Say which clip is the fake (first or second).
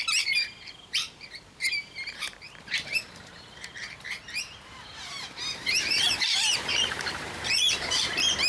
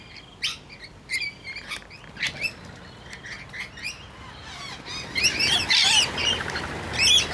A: first